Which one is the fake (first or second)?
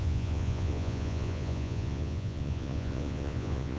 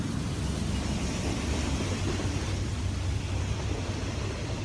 first